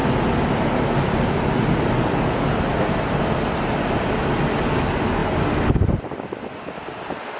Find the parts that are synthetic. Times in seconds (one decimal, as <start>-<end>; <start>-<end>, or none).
none